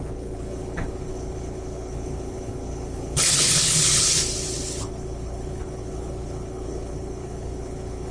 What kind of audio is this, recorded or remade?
remade